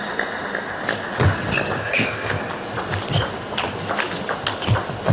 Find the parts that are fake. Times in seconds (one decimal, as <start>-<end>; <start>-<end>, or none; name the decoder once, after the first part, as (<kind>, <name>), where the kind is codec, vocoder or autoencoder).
1.8-2.4 (codec, ZipCodec)